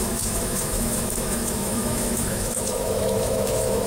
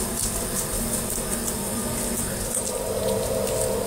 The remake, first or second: first